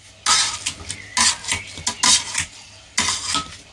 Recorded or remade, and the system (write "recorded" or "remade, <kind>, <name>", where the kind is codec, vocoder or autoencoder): recorded